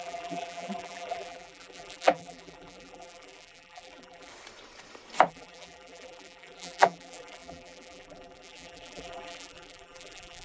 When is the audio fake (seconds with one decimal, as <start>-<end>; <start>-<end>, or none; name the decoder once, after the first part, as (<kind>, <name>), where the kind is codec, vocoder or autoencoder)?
0.0-4.3 (vocoder, BigVGAN v2); 5.3-10.4